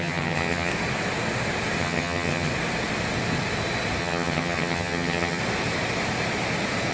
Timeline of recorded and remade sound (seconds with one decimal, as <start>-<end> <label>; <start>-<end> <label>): 0.0-0.7 remade; 0.7-1.8 recorded; 1.8-2.5 remade; 2.5-4.0 recorded; 4.0-5.4 remade; 5.4-6.9 recorded